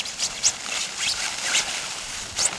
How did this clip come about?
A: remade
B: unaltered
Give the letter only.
B